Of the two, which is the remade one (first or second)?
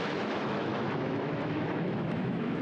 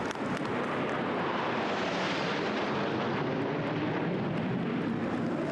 first